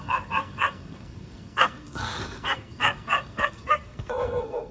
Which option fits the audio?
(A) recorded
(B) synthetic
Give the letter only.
B